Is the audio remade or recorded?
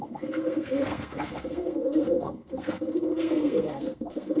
remade